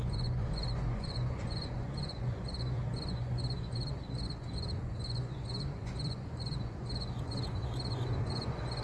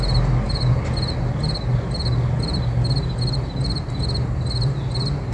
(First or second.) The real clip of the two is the second